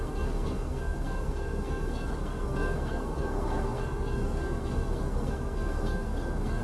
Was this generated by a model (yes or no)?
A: yes